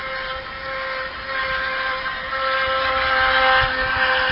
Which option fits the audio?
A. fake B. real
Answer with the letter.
B